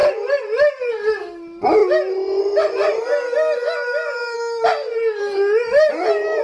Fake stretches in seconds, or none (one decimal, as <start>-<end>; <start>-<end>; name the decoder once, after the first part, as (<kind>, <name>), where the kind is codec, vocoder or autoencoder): 0.0-0.9 (vocoder, BigVGAN v2)